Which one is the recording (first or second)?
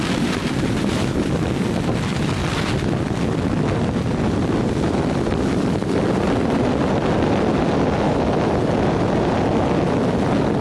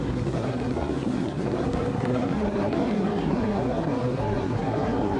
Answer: first